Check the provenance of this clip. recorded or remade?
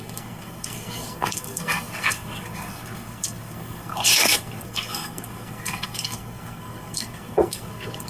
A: remade